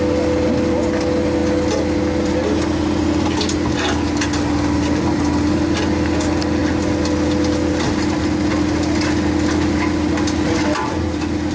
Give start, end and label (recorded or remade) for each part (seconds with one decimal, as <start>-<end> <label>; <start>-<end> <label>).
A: 0.0-11.5 recorded